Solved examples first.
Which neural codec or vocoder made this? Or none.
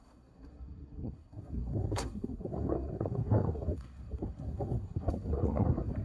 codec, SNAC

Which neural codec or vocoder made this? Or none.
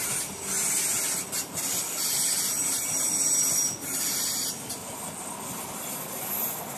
none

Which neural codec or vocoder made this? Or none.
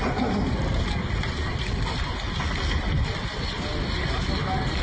none